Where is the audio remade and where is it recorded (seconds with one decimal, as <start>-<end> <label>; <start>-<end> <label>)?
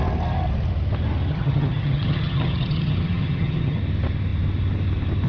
0.0-1.3 recorded; 1.3-3.8 remade; 3.8-5.3 recorded